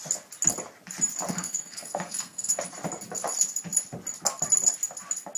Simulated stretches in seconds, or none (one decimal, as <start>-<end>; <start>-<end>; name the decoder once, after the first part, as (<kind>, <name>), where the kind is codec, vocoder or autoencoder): 1.3-2.5 (codec, SNAC)